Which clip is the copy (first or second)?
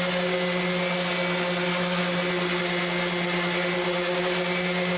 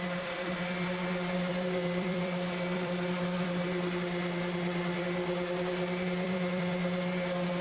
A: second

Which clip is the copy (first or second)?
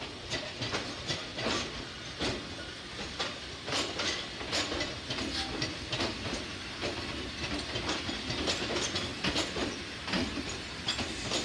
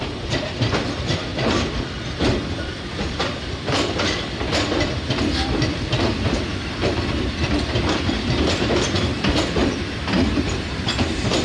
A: second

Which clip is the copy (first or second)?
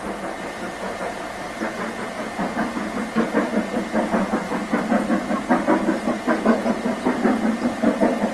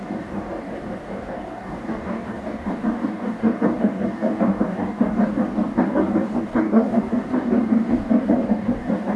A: second